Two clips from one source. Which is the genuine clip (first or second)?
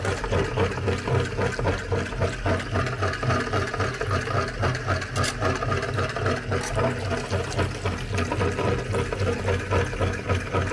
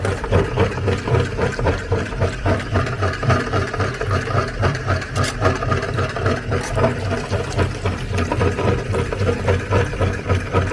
first